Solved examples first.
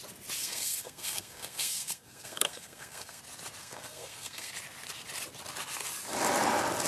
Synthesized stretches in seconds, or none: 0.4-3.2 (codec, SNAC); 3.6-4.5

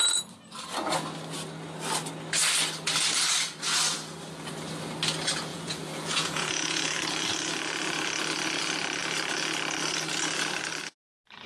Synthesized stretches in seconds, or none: 5.5-6.9 (vocoder, Vocos)

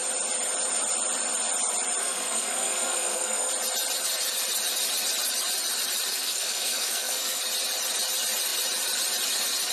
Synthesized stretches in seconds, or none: 2.0-3.5 (codec, SNAC); 6.1-7.4

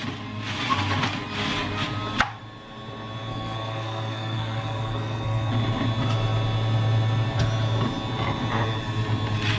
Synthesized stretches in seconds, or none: 3.3-5.5 (codec, SNAC)